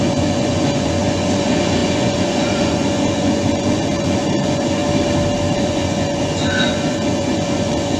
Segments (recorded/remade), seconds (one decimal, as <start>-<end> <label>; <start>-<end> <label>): 0.0-4.8 remade; 4.8-5.5 recorded; 5.5-8.0 remade

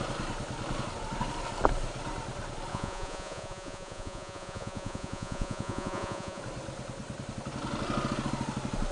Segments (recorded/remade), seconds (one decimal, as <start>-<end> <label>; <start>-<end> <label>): 0.0-2.7 recorded; 2.7-6.4 remade; 6.4-8.9 recorded

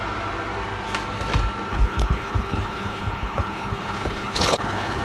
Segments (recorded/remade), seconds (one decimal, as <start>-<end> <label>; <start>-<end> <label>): 0.0-1.7 recorded; 1.7-5.0 remade

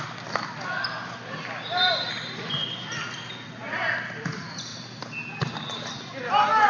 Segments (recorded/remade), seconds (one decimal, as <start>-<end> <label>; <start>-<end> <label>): 0.0-4.7 recorded; 4.7-5.9 remade; 5.9-6.7 recorded

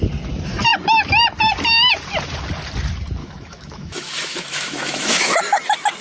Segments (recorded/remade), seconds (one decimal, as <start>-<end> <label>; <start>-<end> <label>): 0.0-3.2 recorded; 3.2-5.4 remade; 5.4-6.0 recorded

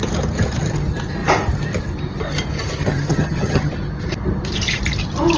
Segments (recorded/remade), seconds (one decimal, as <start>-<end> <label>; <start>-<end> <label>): 0.0-2.8 recorded; 2.8-3.7 remade; 3.7-5.4 recorded

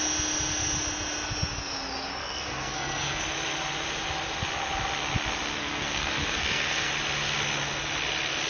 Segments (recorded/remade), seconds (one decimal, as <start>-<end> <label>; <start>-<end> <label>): 0.0-2.2 recorded; 2.2-3.2 remade; 3.2-5.6 recorded; 5.6-6.9 remade; 6.9-8.5 recorded

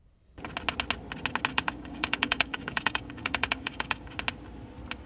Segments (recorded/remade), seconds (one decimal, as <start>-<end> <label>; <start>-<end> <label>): 0.0-1.5 recorded; 1.5-4.1 remade; 4.1-5.1 recorded